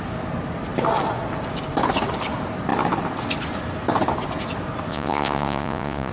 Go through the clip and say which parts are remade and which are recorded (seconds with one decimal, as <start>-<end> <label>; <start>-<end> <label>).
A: 0.0-4.9 recorded; 4.9-6.1 remade